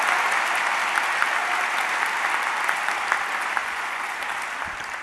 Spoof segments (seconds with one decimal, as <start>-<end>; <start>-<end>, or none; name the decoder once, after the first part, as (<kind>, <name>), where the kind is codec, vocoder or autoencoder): 3.6-4.2 (vocoder, Vocos)